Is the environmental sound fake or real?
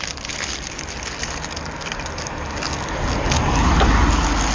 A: real